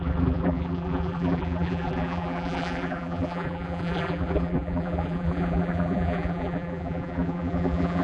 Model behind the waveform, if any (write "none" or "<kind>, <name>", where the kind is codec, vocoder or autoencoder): vocoder, BigVGAN v2